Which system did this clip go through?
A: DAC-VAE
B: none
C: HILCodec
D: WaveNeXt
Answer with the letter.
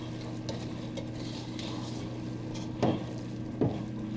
B